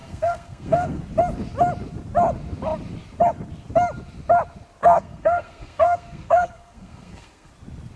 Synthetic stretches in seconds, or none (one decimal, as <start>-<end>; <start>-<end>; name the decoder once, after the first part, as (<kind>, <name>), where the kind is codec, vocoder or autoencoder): 0.0-1.0 (codec, SNAC); 4.8-7.5